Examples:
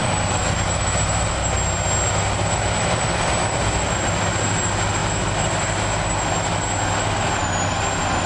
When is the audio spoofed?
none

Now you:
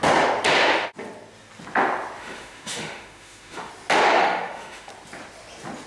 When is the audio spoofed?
2.2-3.7; 4.2-4.9

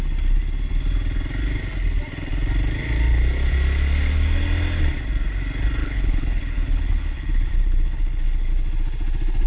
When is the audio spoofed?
5.8-8.5